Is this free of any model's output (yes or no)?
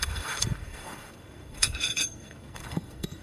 no